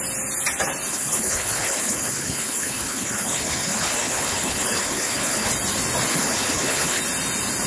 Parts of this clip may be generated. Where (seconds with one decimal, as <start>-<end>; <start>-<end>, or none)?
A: 0.9-5.5; 6.1-7.0